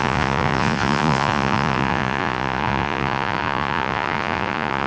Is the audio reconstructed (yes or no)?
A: yes